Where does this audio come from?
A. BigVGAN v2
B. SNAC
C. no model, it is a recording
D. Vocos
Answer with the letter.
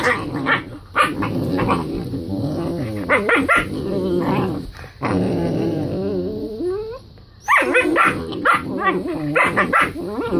C